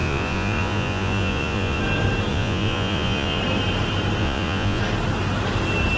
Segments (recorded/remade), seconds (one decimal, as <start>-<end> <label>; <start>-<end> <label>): 0.0-1.8 remade; 1.8-2.3 recorded; 2.3-3.4 remade; 3.4-4.2 recorded; 4.2-4.8 remade; 4.8-6.0 recorded